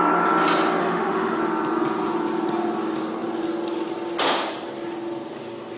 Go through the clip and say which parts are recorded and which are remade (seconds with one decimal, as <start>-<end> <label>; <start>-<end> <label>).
0.0-0.8 recorded; 0.8-1.4 remade; 1.4-5.8 recorded